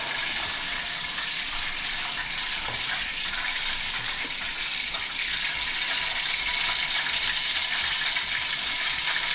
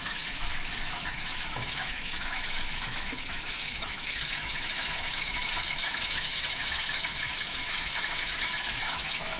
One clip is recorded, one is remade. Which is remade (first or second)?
second